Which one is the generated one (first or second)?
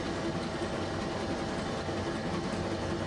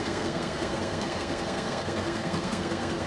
second